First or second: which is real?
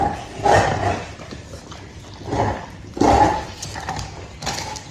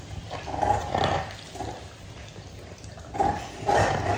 first